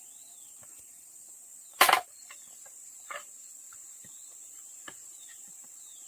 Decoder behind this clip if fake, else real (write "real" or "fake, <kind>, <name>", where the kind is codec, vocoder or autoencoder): fake, vocoder, BigVGAN v2